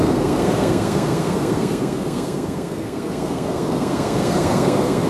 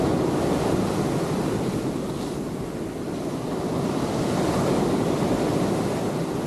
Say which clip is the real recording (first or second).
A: second